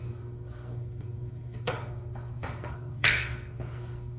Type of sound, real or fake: fake